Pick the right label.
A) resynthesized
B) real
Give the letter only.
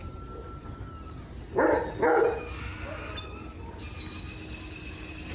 B